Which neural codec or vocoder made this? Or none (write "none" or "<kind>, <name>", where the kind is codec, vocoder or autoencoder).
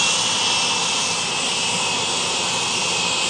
none